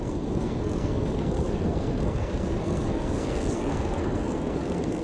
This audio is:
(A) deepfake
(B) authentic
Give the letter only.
A